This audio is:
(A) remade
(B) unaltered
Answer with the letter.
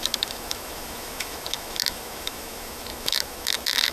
A